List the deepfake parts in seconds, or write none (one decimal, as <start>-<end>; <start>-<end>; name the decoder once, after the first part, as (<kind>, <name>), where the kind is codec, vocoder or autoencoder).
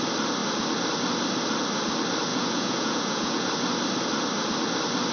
2.3-3.5 (vocoder, Vocos)